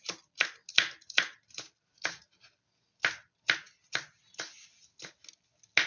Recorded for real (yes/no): yes